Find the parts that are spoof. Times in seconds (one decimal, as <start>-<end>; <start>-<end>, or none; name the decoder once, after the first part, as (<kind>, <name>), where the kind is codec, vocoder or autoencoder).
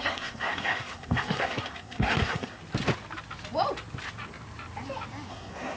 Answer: 0.0-2.6 (codec, SNAC); 5.3-5.8